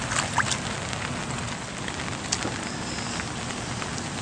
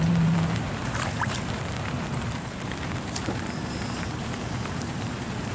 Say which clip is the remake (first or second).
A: second